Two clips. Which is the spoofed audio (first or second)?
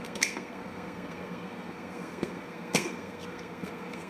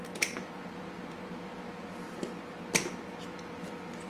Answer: first